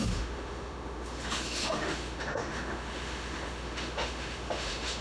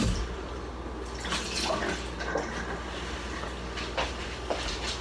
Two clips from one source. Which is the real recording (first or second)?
second